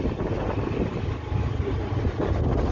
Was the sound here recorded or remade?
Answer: recorded